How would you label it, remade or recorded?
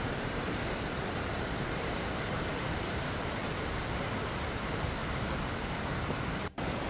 remade